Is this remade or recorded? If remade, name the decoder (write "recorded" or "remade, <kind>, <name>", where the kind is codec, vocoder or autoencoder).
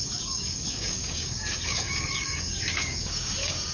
remade, codec, DAC